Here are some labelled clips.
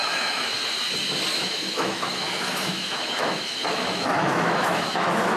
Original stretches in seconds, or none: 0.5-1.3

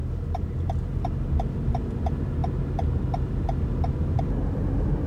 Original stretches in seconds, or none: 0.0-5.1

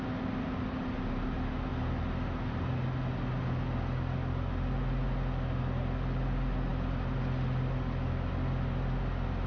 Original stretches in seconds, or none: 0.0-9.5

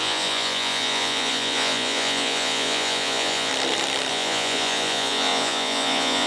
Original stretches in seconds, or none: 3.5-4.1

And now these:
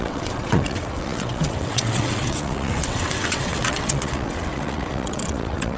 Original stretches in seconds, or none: none

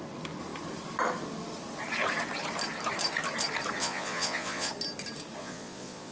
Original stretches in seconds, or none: 0.0-3.8; 4.7-5.4

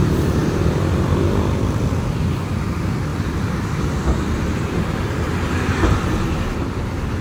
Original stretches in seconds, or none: 5.3-6.0

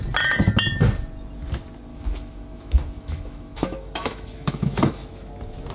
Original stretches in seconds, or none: 0.0-1.9; 5.3-5.7